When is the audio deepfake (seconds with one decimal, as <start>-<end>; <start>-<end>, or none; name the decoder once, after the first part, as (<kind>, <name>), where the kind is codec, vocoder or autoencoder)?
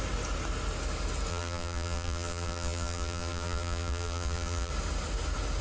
1.3-4.7 (vocoder, BigVGAN v2)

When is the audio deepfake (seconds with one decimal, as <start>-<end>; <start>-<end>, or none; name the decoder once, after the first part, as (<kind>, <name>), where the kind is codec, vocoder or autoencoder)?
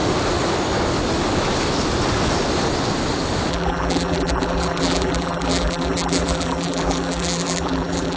3.5-8.2 (vocoder, BigVGAN v2)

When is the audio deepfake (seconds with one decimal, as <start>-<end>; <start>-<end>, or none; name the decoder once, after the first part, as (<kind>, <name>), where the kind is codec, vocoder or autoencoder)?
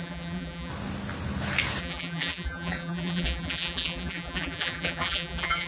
0.0-0.7 (vocoder, BigVGAN v2); 1.8-5.7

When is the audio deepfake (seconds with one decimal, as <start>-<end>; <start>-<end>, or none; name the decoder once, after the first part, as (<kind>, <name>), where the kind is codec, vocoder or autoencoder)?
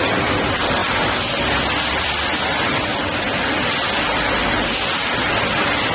0.0-0.8 (vocoder, BigVGAN v2); 2.0-2.9; 4.3-5.9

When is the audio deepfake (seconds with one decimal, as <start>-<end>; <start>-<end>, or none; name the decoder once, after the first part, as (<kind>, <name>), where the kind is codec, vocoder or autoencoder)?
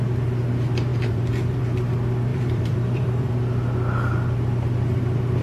0.9-1.6 (vocoder, BigVGAN v2); 2.3-3.3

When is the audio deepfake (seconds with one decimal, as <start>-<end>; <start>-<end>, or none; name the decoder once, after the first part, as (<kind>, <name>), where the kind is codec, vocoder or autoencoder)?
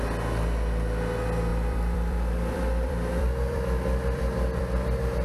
1.5-4.6 (vocoder, BigVGAN v2)